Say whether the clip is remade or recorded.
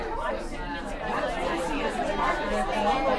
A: recorded